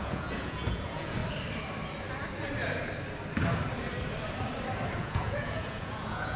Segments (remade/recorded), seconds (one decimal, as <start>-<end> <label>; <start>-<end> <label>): 0.0-1.2 remade; 1.2-5.0 recorded; 5.0-6.4 remade